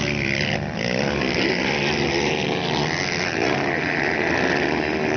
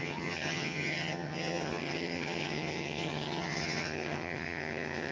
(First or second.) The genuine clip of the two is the first